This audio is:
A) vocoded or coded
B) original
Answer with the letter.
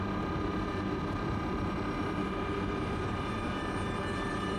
A